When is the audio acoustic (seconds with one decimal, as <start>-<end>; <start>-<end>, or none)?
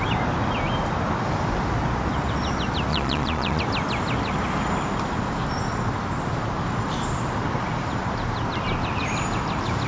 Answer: 0.0-2.9; 3.6-9.9